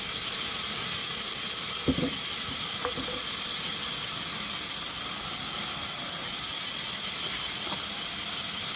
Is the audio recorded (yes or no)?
yes